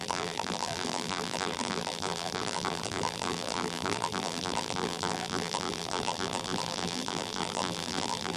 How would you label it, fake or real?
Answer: fake